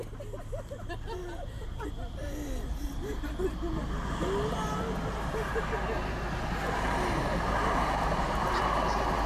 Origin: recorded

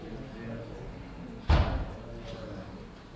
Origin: recorded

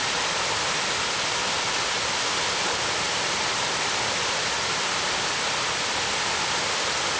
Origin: recorded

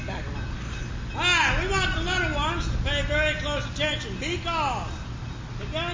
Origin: recorded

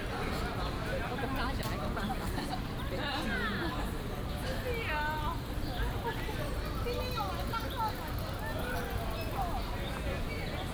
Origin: recorded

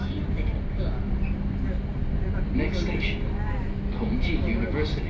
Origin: recorded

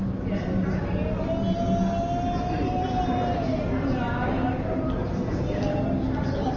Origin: recorded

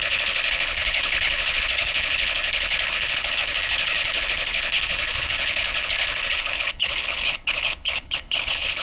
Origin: remade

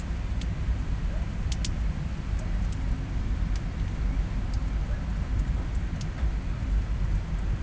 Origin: recorded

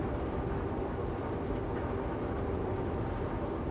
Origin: recorded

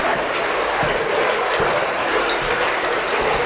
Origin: recorded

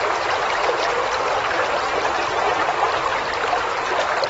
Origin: recorded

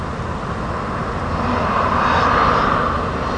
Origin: recorded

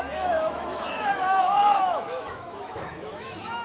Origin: remade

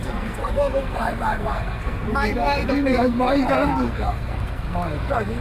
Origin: remade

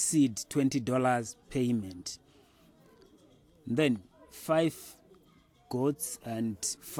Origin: recorded